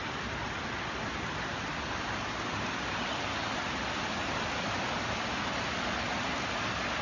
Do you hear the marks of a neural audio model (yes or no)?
no